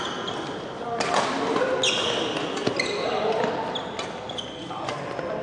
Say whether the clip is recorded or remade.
recorded